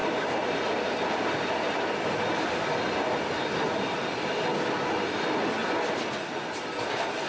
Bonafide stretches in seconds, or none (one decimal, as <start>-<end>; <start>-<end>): 0.0-7.3